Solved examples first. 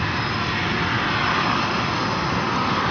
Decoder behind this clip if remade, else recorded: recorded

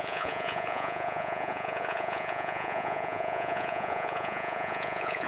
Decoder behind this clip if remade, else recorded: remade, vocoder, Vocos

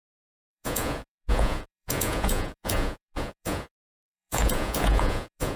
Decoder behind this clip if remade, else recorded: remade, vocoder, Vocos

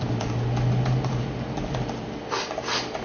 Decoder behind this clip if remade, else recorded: recorded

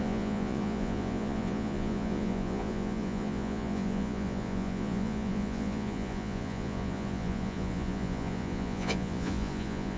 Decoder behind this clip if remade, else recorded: remade, vocoder, Vocos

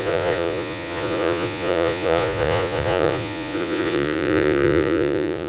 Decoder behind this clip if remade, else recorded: remade, vocoder, Vocos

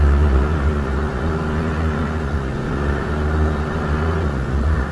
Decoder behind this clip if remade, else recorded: remade, vocoder, Vocos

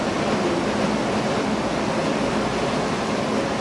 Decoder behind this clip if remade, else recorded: recorded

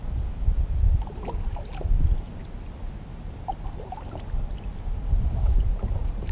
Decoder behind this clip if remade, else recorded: recorded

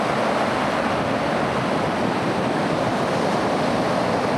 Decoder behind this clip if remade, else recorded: recorded